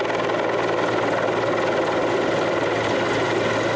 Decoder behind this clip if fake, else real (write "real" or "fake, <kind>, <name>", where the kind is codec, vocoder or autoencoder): real